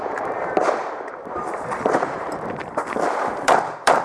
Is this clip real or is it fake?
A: fake